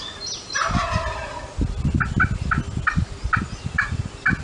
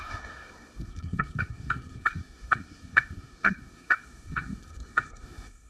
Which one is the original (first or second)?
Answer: first